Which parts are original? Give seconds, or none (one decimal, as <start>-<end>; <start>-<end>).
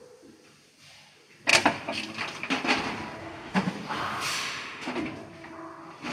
0.0-3.2; 3.7-4.3; 4.9-6.1